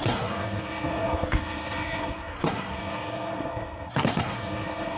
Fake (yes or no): yes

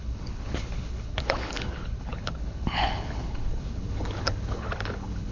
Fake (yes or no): yes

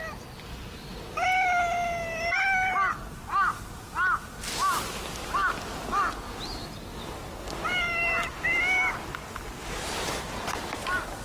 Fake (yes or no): no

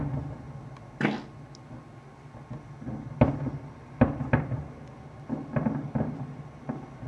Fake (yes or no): no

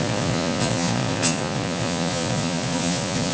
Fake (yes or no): yes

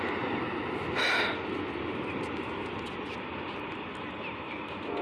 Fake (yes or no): no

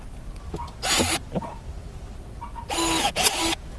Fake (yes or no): no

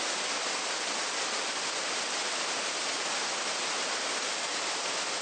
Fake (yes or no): no